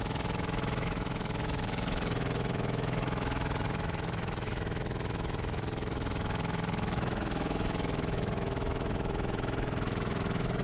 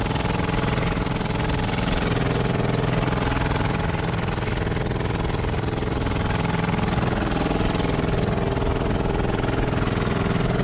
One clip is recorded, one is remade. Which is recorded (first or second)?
second